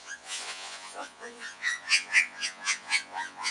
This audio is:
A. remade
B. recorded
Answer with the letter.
A